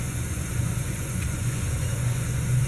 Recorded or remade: remade